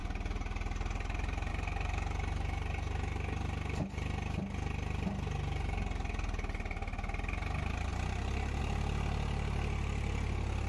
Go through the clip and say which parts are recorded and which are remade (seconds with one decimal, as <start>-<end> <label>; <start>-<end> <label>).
0.0-10.7 recorded

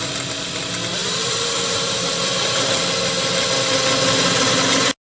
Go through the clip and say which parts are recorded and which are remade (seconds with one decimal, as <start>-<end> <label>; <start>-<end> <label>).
0.0-1.0 recorded; 1.0-3.1 remade; 3.1-5.0 recorded

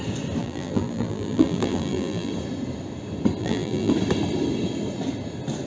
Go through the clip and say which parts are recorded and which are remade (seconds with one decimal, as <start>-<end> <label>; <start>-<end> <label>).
0.0-0.4 recorded; 0.4-2.3 remade; 2.3-3.4 recorded; 3.4-3.9 remade; 3.9-5.7 recorded

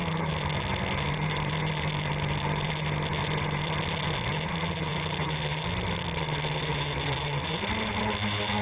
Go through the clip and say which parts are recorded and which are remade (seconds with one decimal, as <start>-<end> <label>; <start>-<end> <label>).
0.0-8.6 recorded

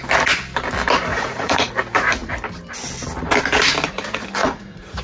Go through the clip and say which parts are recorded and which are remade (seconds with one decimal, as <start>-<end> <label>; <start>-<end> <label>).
0.0-1.1 recorded; 1.1-1.7 remade; 1.7-4.4 recorded; 4.4-5.0 remade